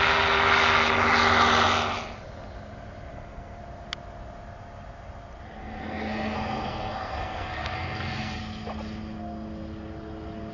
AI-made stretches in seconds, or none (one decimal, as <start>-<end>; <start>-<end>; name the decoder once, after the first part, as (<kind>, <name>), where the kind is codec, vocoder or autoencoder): 3.1-3.6 (codec, SNAC); 5.6-8.4